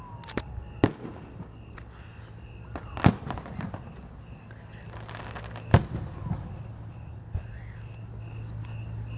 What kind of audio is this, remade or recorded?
recorded